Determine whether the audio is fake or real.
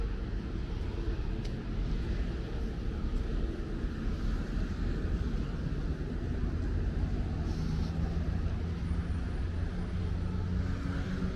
real